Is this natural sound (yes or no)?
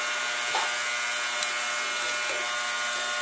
yes